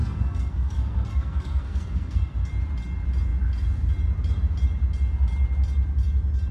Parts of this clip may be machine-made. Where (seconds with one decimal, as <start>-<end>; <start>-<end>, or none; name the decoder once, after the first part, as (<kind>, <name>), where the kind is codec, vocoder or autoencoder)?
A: 0.0-2.5 (codec, SNAC)